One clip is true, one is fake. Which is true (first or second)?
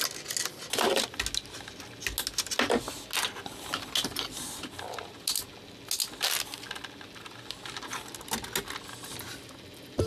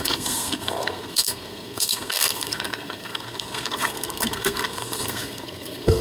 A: first